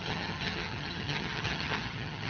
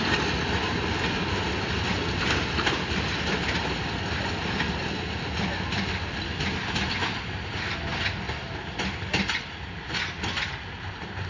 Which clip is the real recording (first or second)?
second